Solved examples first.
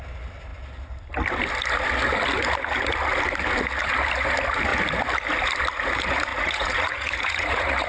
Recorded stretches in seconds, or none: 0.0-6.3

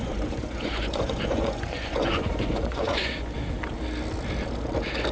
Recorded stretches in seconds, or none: 3.1-5.1

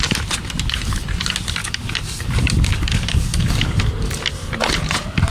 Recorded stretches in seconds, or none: 0.0-1.6; 3.8-5.3

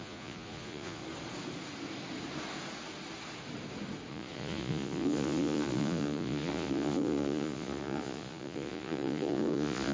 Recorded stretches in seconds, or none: 1.0-4.1

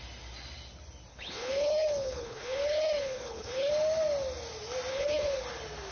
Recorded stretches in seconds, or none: 0.0-1.1; 3.7-4.9; 5.4-5.9